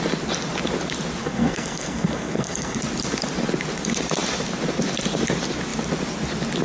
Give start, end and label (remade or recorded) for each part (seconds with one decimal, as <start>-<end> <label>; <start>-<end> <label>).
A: 0.0-1.2 recorded; 1.2-2.8 remade; 2.8-6.6 recorded